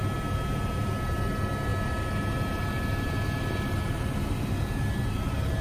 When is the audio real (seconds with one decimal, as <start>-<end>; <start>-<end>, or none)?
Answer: 0.0-5.6